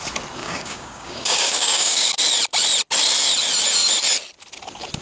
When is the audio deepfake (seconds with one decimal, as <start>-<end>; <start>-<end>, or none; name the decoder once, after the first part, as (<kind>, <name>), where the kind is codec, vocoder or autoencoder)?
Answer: 0.4-2.2 (codec, DAC)